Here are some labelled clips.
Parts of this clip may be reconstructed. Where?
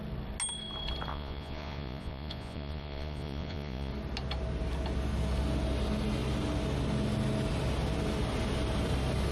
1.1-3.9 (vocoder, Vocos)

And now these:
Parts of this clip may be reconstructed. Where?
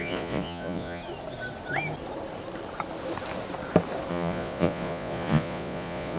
0.0-1.0 (vocoder, Vocos); 4.1-6.2